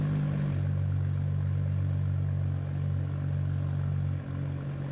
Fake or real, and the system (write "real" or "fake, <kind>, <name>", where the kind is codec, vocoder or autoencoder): real